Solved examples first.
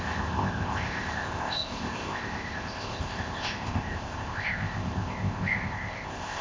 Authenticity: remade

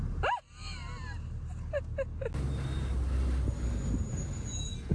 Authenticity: recorded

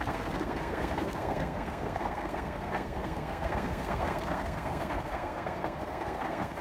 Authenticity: remade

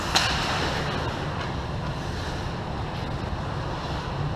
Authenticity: recorded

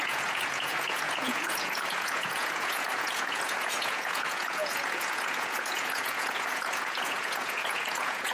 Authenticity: remade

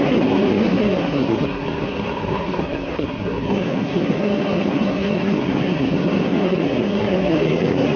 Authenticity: remade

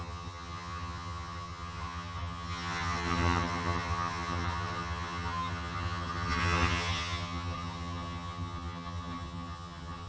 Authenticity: remade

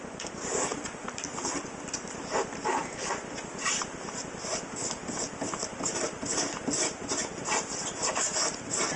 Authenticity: recorded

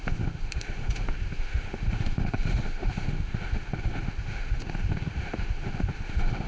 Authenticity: remade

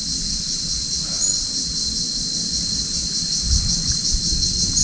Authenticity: recorded